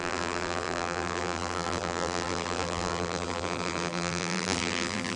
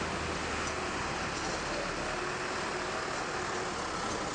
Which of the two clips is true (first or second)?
second